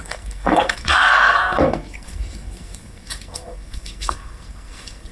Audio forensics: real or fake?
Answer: fake